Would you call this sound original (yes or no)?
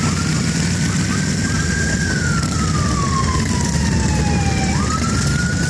yes